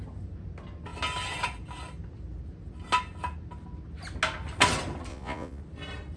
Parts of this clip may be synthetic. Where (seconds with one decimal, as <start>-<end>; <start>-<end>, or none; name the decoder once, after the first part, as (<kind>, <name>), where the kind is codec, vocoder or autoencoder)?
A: 5.1-5.6 (vocoder, Vocos)